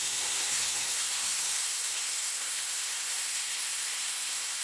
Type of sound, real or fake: fake